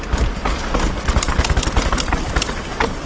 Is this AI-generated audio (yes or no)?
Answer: no